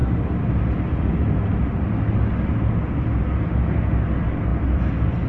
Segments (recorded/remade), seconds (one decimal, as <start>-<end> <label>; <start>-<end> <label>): 0.0-5.3 recorded

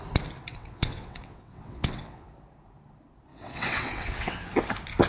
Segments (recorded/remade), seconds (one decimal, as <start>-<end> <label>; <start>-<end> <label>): 0.0-0.5 recorded; 0.5-2.3 remade; 2.3-3.3 recorded; 3.3-4.5 remade; 4.5-5.1 recorded